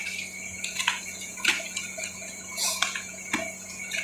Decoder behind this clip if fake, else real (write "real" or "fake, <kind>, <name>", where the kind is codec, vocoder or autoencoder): fake, vocoder, Vocos